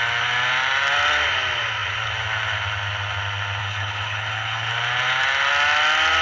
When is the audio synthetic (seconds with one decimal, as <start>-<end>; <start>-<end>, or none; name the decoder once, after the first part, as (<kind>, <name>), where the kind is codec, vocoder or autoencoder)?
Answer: 3.6-4.7 (codec, HILCodec)